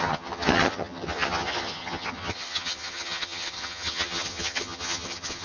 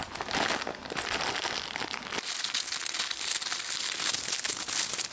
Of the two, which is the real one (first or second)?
second